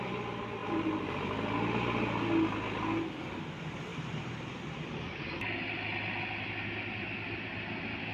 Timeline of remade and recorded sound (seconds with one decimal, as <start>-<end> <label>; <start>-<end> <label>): 0.0-0.6 recorded; 0.6-1.1 remade; 1.1-3.9 recorded; 3.9-5.4 remade; 5.4-8.1 recorded